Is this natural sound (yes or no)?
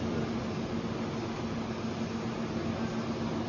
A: yes